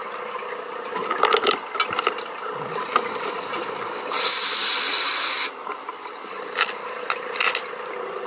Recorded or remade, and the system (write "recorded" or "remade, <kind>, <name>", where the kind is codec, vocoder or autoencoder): recorded